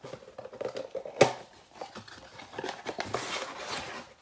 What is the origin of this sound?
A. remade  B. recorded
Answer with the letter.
B